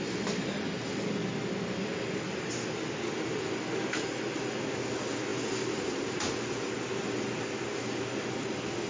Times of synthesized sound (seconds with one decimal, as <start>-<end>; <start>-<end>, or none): none